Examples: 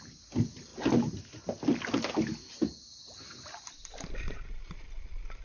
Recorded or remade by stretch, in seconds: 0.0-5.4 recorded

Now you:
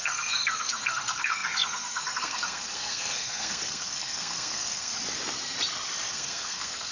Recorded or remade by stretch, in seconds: 0.0-4.9 remade; 4.9-6.1 recorded; 6.1-6.9 remade

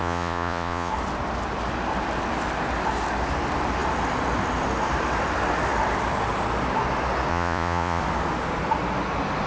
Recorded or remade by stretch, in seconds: 0.0-0.9 remade; 0.9-7.3 recorded; 7.3-8.0 remade; 8.0-9.5 recorded